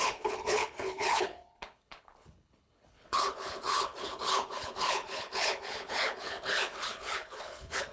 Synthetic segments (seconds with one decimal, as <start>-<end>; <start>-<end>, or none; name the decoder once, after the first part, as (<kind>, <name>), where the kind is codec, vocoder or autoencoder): 0.0-7.9 (codec, HILCodec)